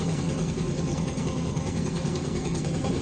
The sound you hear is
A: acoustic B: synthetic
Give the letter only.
B